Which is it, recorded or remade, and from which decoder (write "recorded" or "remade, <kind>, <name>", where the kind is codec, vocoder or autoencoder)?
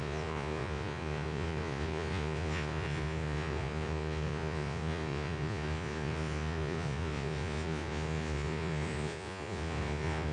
remade, vocoder, Vocos